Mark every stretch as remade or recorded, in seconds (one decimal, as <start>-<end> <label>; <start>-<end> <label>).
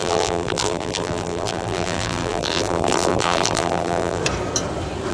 0.0-4.2 remade; 4.2-5.1 recorded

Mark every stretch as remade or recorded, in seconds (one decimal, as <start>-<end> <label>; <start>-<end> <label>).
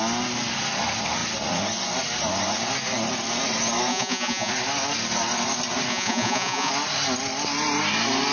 0.0-3.9 recorded; 3.9-4.5 remade; 4.5-5.9 recorded; 5.9-6.7 remade; 6.7-8.3 recorded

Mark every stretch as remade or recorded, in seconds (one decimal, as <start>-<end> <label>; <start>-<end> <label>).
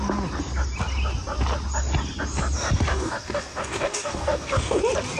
0.0-2.9 recorded; 2.9-4.8 remade; 4.8-5.2 recorded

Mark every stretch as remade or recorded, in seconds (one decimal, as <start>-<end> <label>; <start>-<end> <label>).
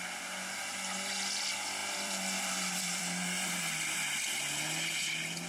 0.0-1.8 recorded; 1.8-3.6 remade; 3.6-5.5 recorded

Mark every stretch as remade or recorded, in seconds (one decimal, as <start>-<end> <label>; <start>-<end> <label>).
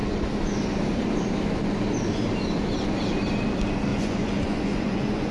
0.0-3.9 recorded; 3.9-5.3 remade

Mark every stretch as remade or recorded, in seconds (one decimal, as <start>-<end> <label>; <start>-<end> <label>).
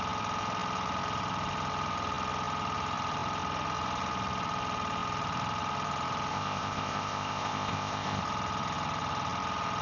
0.0-6.3 recorded; 6.3-8.2 remade; 8.2-9.8 recorded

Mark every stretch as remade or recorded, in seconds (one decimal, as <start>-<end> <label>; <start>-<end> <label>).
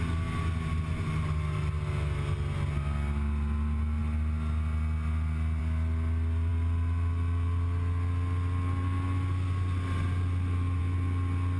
0.0-11.6 recorded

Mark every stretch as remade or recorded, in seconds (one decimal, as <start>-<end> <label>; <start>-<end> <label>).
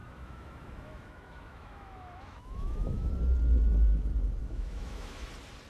0.0-3.1 remade; 3.1-4.4 recorded; 4.4-5.3 remade; 5.3-5.7 recorded